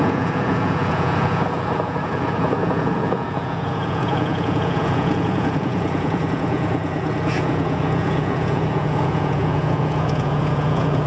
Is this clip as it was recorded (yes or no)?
no